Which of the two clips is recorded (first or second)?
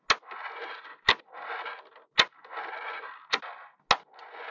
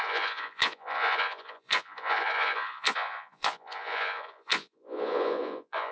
first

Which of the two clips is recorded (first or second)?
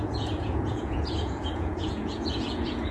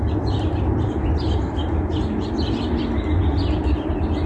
second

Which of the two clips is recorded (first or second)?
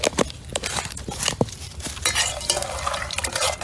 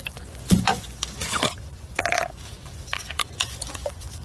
first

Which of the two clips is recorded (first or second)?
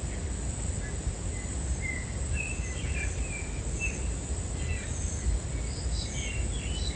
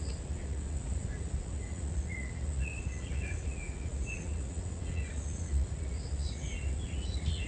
first